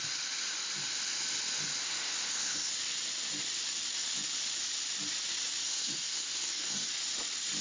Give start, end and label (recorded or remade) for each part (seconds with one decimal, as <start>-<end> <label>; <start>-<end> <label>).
0.0-1.8 recorded; 1.8-2.7 remade; 2.7-5.6 recorded; 5.6-6.9 remade; 6.9-7.6 recorded